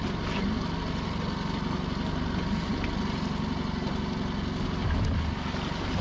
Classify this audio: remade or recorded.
recorded